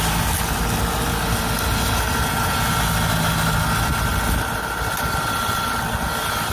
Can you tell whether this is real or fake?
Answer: real